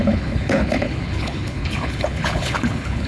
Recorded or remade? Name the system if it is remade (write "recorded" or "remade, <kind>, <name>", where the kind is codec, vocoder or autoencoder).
remade, codec, HILCodec